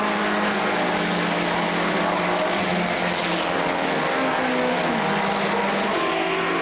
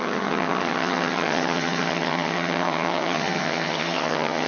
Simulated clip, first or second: second